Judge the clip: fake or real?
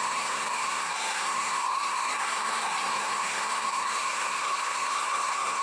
fake